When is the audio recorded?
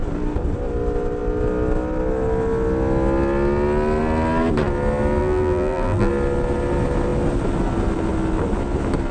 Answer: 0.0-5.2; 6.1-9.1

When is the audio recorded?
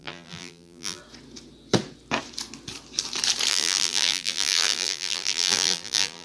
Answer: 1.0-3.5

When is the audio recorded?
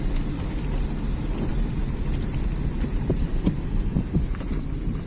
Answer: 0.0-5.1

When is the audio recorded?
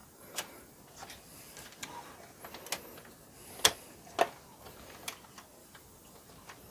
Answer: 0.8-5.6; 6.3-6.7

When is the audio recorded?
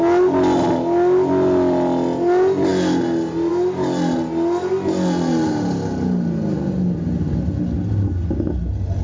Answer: 0.0-9.0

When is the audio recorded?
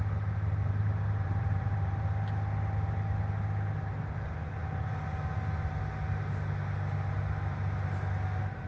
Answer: 0.0-0.6; 2.0-8.7